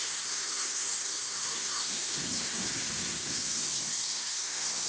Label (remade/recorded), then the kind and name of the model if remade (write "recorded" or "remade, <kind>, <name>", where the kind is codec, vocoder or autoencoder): remade, codec, SNAC